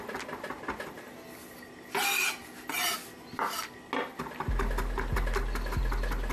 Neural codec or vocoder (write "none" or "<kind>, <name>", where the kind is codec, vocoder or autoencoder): none